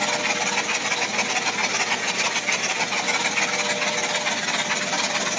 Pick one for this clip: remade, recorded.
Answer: recorded